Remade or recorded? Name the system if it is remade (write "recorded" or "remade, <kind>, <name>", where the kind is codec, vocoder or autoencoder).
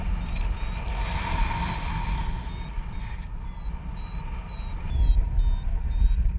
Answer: recorded